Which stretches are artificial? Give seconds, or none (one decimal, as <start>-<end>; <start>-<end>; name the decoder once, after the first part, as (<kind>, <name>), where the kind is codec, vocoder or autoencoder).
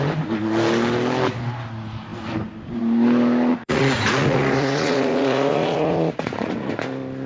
3.5-6.7 (vocoder, Vocos)